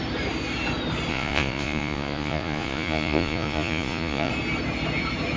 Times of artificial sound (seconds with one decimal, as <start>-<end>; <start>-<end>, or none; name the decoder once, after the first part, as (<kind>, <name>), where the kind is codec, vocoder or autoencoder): 1.1-4.3 (vocoder, Vocos)